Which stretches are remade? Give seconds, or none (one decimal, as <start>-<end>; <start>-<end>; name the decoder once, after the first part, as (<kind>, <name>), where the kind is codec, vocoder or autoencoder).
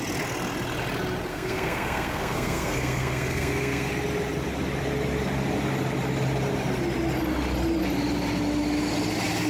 1.3-3.9 (codec, SNAC)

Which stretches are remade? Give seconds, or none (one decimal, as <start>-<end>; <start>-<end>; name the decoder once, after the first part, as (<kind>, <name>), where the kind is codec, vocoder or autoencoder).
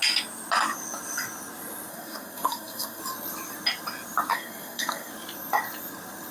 1.9-3.0 (codec, SNAC); 4.3-5.1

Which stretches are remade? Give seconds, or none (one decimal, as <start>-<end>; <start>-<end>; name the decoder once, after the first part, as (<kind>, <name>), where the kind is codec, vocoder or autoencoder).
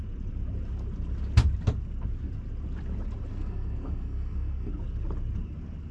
3.3-4.7 (codec, SNAC)